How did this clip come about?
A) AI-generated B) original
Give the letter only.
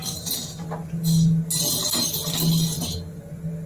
B